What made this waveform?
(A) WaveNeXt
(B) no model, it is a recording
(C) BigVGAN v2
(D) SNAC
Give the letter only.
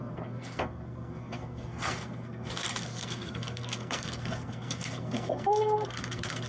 D